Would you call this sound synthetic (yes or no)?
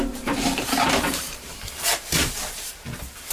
yes